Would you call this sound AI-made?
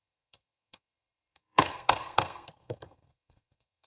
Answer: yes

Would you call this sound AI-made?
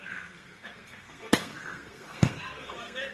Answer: yes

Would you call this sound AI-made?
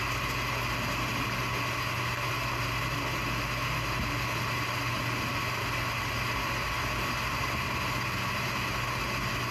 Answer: no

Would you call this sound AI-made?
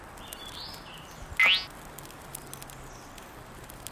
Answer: no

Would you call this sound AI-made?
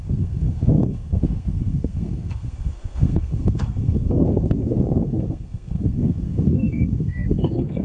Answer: yes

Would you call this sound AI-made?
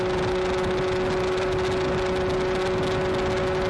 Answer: no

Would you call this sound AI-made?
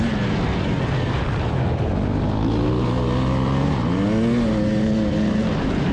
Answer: no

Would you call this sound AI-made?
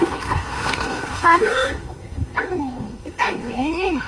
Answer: yes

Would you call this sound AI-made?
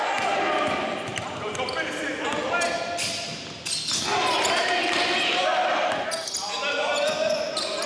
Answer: no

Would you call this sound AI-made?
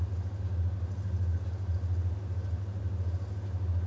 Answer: no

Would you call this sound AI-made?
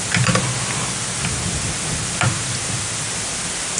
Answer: no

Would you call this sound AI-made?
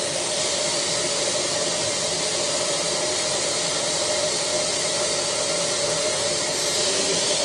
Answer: no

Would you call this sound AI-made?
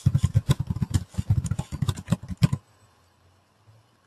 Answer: no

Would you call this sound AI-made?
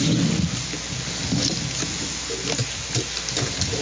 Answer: no